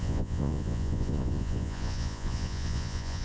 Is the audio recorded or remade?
remade